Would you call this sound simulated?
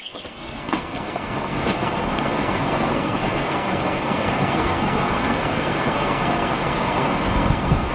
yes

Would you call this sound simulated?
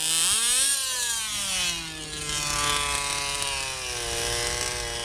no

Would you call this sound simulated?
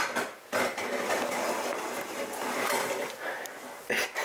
no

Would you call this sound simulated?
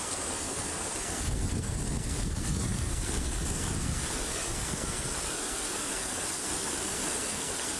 yes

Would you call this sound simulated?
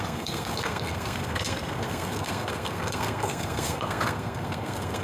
yes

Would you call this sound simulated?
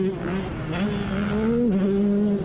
no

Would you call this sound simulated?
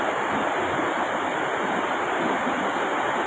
no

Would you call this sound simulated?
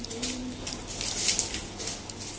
no